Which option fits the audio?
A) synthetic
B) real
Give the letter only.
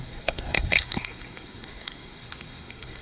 A